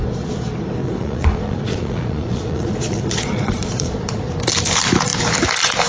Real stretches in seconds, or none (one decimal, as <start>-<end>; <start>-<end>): 0.0-0.8; 4.3-5.9